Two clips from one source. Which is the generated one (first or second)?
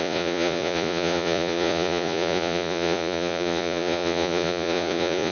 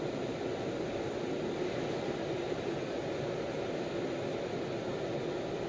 first